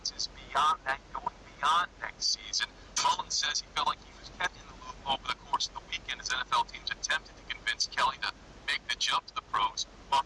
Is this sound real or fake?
real